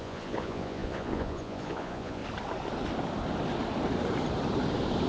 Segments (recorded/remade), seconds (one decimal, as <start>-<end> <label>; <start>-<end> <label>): 0.0-2.2 remade; 2.2-5.1 recorded